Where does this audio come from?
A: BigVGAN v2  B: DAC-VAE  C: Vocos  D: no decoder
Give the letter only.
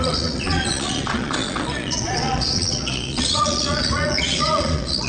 C